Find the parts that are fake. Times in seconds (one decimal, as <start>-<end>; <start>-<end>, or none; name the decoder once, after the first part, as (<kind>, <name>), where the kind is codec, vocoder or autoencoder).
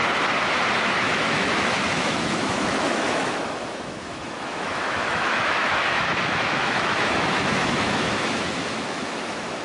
0.8-9.6 (autoencoder, DAC-VAE)